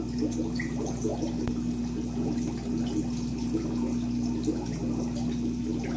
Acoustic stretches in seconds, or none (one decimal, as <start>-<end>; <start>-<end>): 0.0-6.0